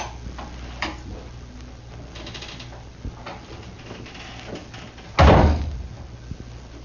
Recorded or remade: recorded